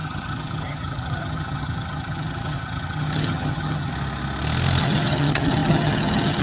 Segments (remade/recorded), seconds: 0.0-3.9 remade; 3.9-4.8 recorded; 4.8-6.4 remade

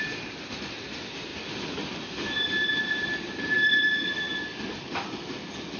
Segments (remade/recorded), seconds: 0.0-5.8 recorded

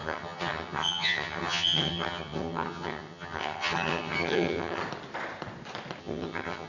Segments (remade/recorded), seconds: 0.0-4.8 remade; 4.8-6.0 recorded; 6.0-6.7 remade